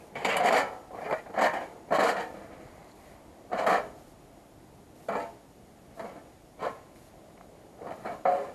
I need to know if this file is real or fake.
real